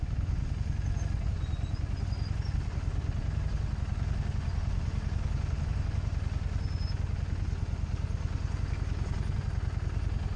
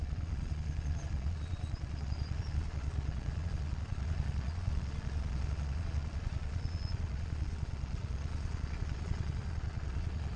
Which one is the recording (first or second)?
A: first